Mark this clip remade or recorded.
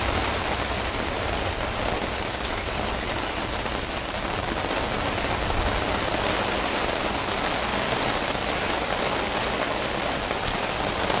recorded